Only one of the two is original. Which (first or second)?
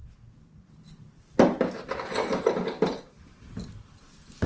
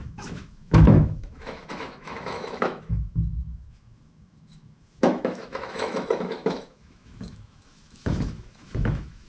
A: first